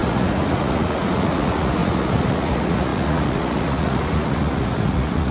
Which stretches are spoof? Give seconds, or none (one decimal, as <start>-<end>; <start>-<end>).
0.0-5.3